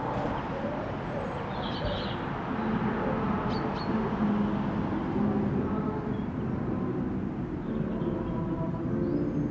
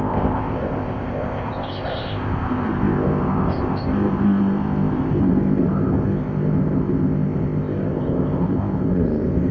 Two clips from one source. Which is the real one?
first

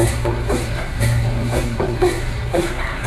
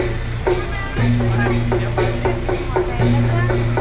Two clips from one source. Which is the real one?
second